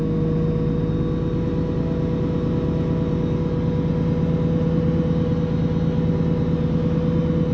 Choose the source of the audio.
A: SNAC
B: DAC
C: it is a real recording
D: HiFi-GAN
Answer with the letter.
C